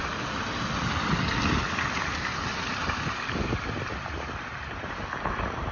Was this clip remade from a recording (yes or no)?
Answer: no